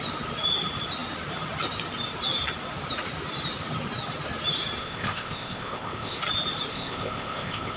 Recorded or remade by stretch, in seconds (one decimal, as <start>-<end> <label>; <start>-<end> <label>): 0.0-4.8 recorded; 4.8-6.2 remade; 6.2-6.7 recorded; 6.7-7.8 remade